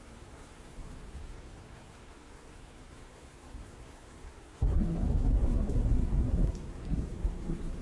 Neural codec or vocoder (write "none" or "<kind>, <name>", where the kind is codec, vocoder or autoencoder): codec, SNAC